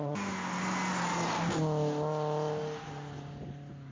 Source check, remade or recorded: recorded